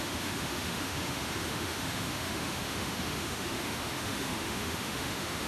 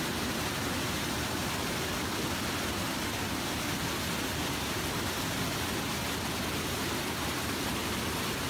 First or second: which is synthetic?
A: first